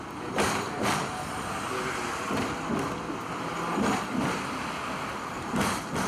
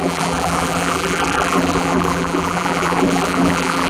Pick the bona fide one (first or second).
first